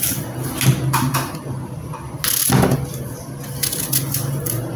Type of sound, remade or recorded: recorded